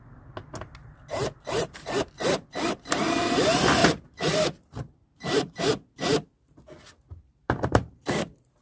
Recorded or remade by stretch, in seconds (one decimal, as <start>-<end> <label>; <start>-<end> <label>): 0.0-1.1 recorded; 1.1-3.3 remade; 3.3-3.8 recorded; 3.8-5.7 remade; 5.7-7.3 recorded; 7.3-8.6 remade